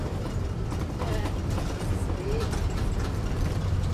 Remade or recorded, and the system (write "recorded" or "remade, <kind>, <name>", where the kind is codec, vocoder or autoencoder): remade, vocoder, BigVGAN v2